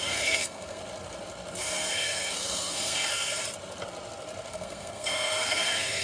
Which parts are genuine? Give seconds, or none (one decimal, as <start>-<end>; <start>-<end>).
0.8-1.6; 3.4-4.5